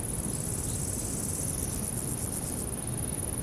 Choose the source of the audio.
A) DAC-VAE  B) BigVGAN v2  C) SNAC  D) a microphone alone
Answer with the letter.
D